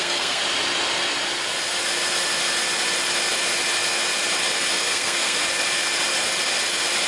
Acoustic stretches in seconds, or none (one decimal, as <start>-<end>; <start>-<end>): 0.4-4.7; 5.4-7.1